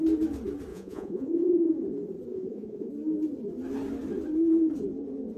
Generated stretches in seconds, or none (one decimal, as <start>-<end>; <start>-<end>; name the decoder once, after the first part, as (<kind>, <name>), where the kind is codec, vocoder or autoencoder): 0.7-1.7 (vocoder, Vocos); 2.3-2.9